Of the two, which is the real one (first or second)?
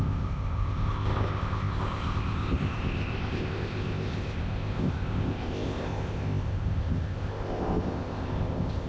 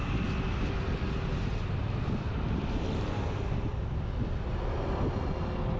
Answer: second